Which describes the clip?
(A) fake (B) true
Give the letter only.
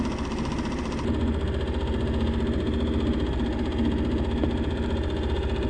B